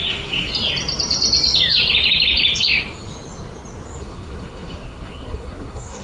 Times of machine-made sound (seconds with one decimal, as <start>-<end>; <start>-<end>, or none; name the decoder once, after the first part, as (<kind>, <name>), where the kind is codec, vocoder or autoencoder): 0.0-0.5 (codec, SNAC); 4.0-6.0